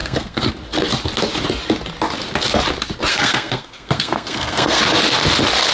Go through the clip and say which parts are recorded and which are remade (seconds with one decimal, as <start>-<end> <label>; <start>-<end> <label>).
0.0-0.5 remade; 0.5-3.1 recorded; 3.1-4.8 remade; 4.8-5.7 recorded